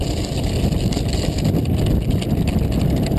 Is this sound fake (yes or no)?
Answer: no